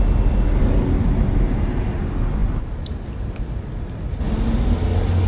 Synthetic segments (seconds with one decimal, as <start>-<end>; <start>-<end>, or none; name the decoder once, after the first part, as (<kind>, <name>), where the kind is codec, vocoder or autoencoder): none